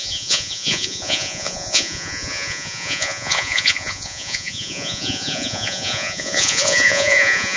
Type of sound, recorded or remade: remade